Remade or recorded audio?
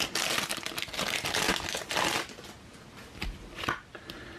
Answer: recorded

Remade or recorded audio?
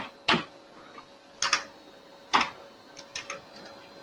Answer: recorded